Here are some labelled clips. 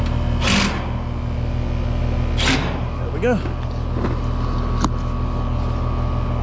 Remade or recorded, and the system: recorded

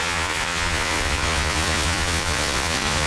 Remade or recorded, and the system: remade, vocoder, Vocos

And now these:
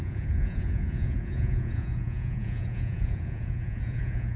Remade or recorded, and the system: remade, vocoder, Vocos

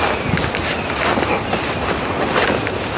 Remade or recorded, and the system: recorded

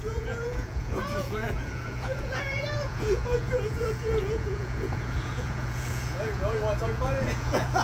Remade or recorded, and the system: remade, vocoder, Vocos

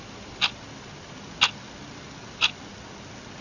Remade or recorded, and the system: recorded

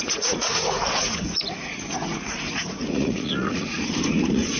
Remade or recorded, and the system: remade, vocoder, Vocos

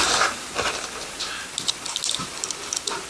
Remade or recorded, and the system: recorded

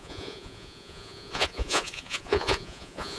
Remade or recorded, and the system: remade, vocoder, Vocos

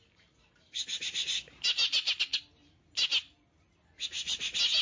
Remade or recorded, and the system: recorded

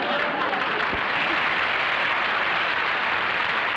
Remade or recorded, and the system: recorded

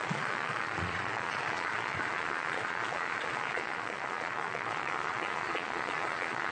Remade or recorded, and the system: remade, vocoder, Vocos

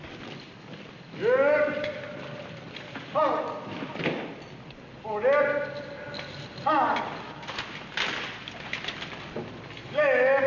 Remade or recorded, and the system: recorded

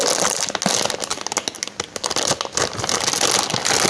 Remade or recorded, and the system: recorded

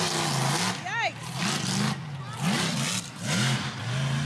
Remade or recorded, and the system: recorded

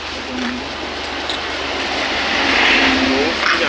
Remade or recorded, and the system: recorded